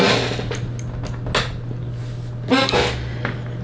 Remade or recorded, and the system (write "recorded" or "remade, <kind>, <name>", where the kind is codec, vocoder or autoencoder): recorded